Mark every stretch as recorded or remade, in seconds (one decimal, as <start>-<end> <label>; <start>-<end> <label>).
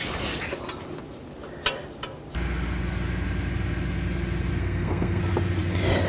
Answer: 0.0-4.6 recorded; 4.6-5.2 remade; 5.2-6.1 recorded